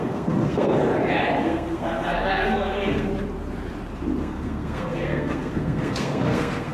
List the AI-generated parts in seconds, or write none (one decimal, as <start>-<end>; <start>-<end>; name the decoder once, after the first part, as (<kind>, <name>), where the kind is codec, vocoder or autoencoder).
0.0-0.9 (codec, SNAC); 1.4-3.1; 4.2-6.7